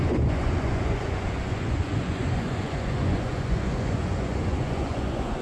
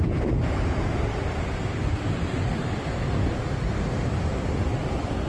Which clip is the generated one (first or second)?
first